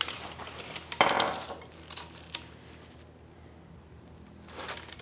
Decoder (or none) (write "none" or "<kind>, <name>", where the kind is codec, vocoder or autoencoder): none